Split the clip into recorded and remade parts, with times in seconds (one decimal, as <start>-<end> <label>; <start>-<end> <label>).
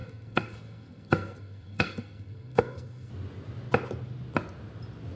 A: 0.0-3.1 remade; 3.1-5.2 recorded